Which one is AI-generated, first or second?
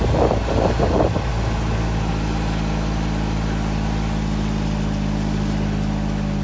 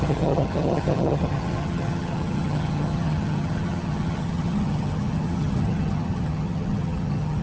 second